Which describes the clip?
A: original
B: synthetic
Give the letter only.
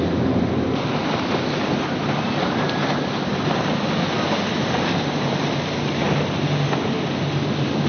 A